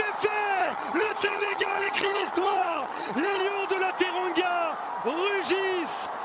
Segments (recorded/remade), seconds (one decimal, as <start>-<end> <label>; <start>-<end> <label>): 0.0-0.6 recorded; 0.6-3.4 remade; 3.4-6.2 recorded